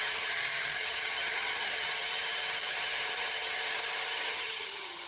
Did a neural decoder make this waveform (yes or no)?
yes